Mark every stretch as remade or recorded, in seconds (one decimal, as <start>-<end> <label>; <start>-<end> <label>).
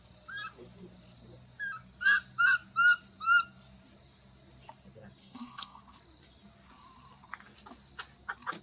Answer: 0.0-5.2 recorded; 5.2-5.8 remade; 5.8-8.6 recorded